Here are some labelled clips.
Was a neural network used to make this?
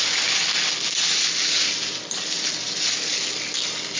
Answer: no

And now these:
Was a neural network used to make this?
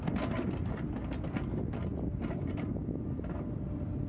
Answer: no